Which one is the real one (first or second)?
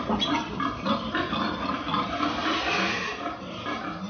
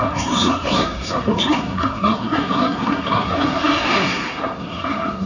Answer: first